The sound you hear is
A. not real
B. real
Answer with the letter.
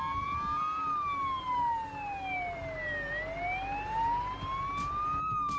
B